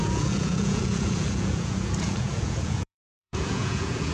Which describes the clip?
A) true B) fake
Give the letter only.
B